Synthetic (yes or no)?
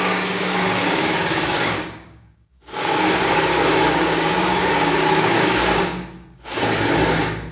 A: yes